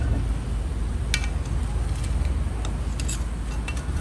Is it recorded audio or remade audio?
recorded